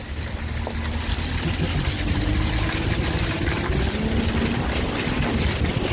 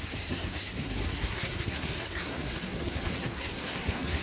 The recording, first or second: first